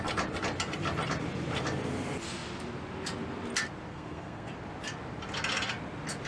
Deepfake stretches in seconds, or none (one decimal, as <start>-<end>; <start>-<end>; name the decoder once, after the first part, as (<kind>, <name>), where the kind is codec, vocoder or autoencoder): 3.9-4.5 (codec, SNAC)